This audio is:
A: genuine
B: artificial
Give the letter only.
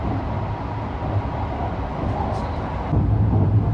A